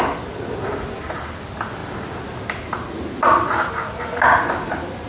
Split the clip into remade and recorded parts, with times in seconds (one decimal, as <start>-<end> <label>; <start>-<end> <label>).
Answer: 0.0-5.1 recorded